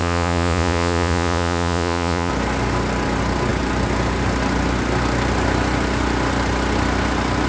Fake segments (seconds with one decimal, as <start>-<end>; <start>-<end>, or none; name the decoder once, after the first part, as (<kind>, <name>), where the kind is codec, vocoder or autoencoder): 0.0-2.3 (vocoder, Vocos)

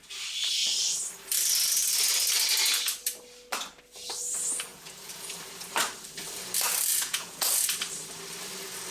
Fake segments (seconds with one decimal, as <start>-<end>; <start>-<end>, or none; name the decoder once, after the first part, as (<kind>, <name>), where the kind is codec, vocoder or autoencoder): 4.7-5.4 (vocoder, Vocos); 6.9-7.5

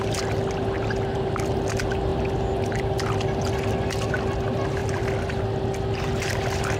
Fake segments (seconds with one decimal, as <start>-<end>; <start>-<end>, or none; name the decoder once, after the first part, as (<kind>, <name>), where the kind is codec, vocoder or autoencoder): none

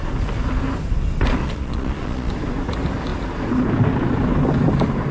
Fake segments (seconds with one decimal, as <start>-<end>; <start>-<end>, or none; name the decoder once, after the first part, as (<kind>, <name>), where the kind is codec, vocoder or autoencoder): 1.4-2.3 (vocoder, Vocos)

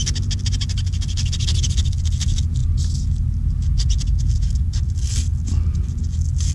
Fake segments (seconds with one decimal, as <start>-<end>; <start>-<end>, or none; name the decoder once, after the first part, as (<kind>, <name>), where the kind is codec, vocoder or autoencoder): none

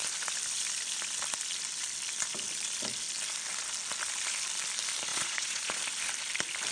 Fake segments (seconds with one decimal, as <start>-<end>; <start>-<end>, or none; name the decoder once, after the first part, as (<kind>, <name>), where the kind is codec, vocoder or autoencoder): 5.1-5.8 (vocoder, Vocos)

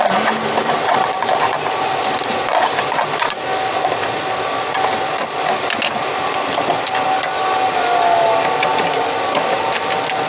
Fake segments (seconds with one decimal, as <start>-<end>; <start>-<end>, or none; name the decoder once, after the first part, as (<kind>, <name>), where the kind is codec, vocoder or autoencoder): none